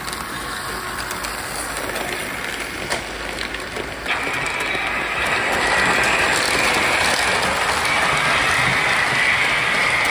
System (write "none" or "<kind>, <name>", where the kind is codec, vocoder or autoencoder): none